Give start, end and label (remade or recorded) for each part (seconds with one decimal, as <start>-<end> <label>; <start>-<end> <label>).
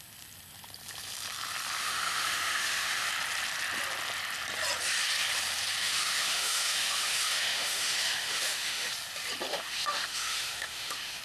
0.0-1.8 recorded; 1.8-3.1 remade; 3.1-5.8 recorded; 5.8-8.9 remade; 8.9-9.5 recorded; 9.5-11.2 remade